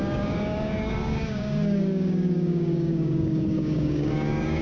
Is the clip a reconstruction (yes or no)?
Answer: yes